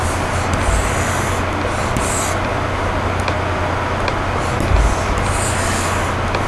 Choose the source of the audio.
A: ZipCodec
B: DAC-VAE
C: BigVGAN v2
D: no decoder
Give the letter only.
D